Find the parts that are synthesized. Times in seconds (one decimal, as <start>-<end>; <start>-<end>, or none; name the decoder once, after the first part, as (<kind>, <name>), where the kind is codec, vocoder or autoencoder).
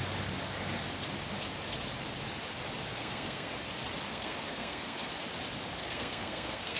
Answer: 2.9-3.5 (codec, SNAC); 4.1-5.1; 5.8-6.8